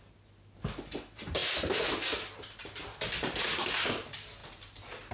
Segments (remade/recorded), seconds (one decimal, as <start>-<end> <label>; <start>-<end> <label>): 0.0-1.4 remade; 1.4-2.4 recorded; 2.4-4.4 remade; 4.4-5.1 recorded

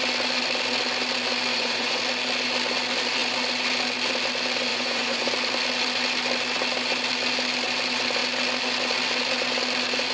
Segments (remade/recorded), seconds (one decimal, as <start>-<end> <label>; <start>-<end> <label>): 0.0-1.5 recorded; 1.5-2.0 remade; 2.0-4.7 recorded; 4.7-5.3 remade; 5.3-10.1 recorded

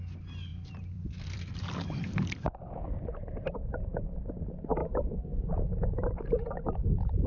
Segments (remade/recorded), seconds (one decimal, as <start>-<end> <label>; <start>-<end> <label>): 0.0-0.5 recorded; 0.5-4.3 remade; 4.3-4.8 recorded; 4.8-5.5 remade; 5.5-7.3 recorded

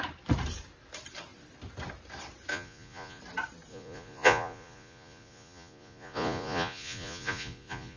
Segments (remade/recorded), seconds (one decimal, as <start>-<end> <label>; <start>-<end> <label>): 0.0-2.5 recorded; 2.5-3.2 remade; 3.2-3.7 recorded; 3.7-8.0 remade

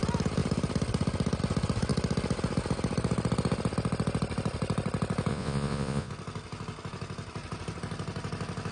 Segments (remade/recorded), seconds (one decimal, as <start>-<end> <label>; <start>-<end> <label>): 0.0-5.3 recorded; 5.3-6.1 remade; 6.1-8.7 recorded

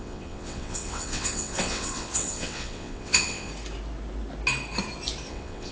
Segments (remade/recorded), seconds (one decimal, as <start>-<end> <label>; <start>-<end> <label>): 0.0-3.5 remade; 3.5-5.3 recorded; 5.3-5.7 remade

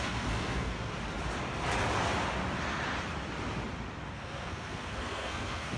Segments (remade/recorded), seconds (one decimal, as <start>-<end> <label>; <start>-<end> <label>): 0.0-0.9 remade; 0.9-4.1 recorded; 4.1-5.8 remade

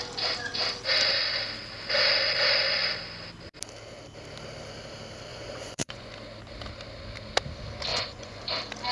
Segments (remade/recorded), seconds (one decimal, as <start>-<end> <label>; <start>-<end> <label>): 0.0-5.3 recorded; 5.3-6.1 remade; 6.1-7.9 recorded; 7.9-8.5 remade; 8.5-8.9 recorded